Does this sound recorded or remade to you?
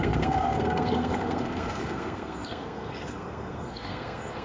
remade